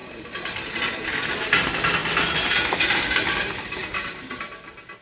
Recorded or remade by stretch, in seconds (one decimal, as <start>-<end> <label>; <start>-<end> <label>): 0.0-0.8 remade; 0.8-3.8 recorded; 3.8-4.4 remade; 4.4-5.0 recorded